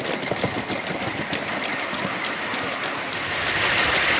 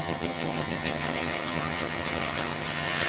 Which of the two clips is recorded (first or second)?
first